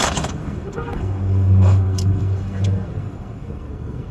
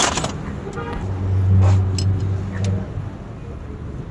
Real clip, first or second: second